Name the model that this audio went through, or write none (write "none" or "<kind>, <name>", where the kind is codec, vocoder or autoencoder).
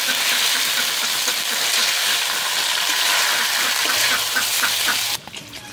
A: vocoder, BigVGAN v2